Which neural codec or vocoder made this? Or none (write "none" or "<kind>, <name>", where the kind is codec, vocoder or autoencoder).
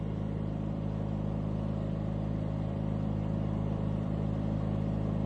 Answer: vocoder, BigVGAN v2